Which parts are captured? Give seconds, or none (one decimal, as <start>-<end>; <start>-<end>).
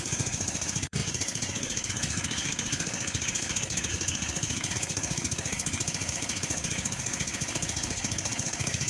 none